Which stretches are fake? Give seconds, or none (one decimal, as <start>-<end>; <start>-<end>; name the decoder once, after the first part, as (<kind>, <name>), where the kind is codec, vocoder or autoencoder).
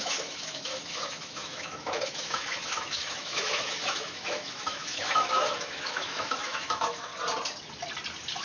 0.0-7.1 (autoencoder, DAC-VAE)